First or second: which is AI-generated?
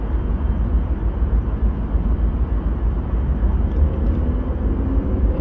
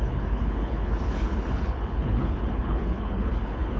second